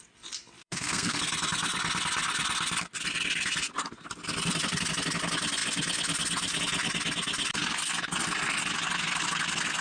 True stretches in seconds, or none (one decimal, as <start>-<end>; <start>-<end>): 0.0-0.6; 1.2-9.8